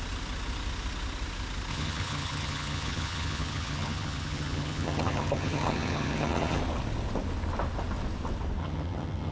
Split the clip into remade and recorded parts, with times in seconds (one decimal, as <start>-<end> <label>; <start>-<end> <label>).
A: 0.0-1.7 recorded; 1.7-6.6 remade; 6.6-8.6 recorded; 8.6-9.3 remade